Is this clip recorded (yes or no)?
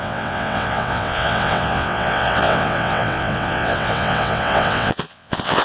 no